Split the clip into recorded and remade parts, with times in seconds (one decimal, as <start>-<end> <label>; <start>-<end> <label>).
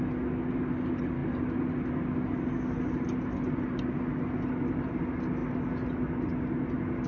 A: 0.0-7.1 recorded